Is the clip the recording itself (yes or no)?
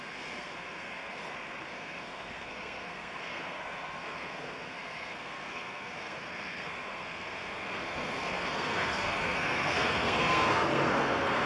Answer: no